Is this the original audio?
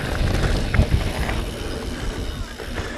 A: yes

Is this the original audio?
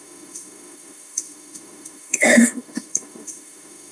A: no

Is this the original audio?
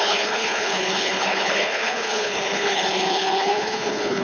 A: no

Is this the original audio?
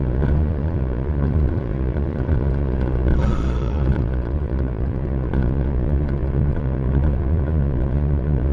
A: no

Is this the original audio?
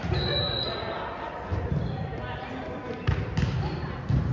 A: yes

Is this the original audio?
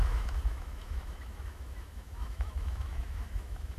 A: no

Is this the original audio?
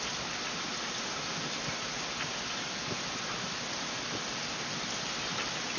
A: yes